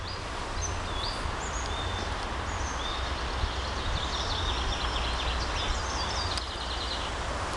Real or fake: real